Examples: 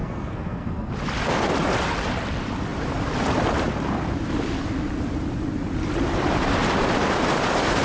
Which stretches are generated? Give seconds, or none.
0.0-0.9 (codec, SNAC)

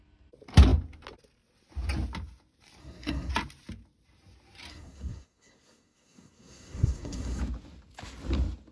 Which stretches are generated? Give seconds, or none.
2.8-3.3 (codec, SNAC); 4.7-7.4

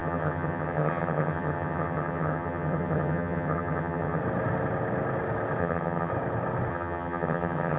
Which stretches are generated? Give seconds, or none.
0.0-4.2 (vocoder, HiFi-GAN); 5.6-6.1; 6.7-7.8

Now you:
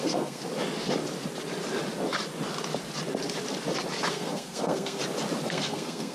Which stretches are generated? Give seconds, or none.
0.0-0.4 (codec, SNAC); 4.1-5.0; 5.5-6.1

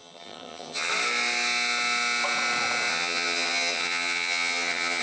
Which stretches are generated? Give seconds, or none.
0.0-0.9 (vocoder, HiFi-GAN); 2.9-5.0